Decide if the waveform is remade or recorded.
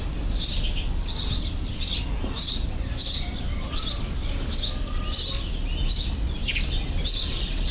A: recorded